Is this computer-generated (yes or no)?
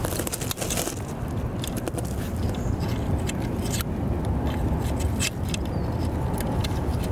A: no